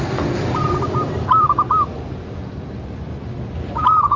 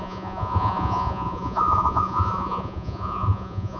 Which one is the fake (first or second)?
second